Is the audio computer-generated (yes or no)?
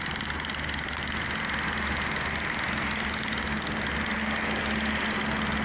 no